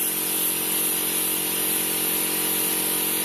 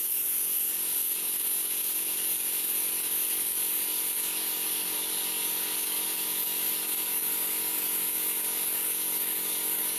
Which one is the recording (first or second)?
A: first